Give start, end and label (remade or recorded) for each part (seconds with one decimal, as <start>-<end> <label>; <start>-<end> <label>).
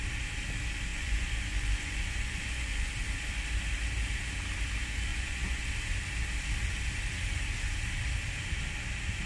0.0-0.9 recorded; 0.9-2.9 remade; 2.9-5.1 recorded; 5.1-5.7 remade; 5.7-9.3 recorded